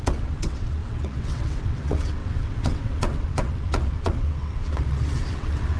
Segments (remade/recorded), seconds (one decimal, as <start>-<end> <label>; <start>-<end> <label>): 0.0-5.8 remade